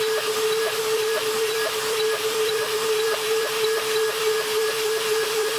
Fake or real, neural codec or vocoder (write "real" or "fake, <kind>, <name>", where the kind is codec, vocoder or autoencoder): fake, vocoder, BigVGAN v2